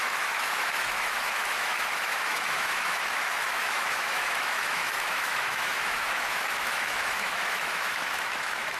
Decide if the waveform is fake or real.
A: fake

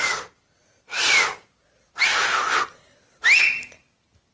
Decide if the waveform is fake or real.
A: real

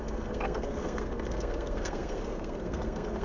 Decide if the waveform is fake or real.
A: fake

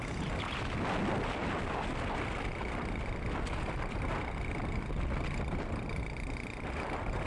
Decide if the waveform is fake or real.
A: real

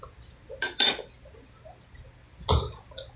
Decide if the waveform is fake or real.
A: real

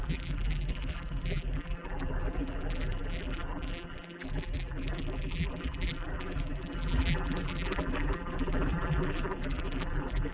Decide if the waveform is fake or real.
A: fake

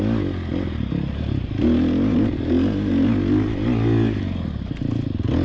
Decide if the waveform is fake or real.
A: real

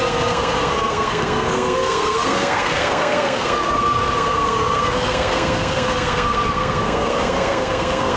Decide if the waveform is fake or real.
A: fake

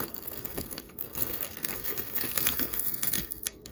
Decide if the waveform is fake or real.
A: fake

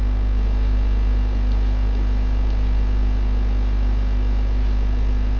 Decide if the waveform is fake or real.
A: real